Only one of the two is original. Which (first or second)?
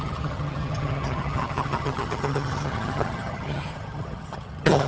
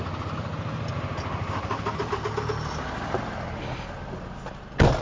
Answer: second